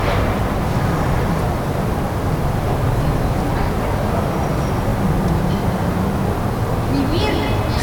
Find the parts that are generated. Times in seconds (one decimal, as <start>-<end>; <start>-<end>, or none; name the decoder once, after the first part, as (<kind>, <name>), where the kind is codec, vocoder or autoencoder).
none